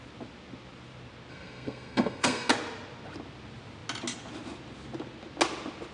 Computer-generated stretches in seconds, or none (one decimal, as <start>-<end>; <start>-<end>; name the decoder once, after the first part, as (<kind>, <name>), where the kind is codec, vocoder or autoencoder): 1.3-2.5 (codec, SNAC)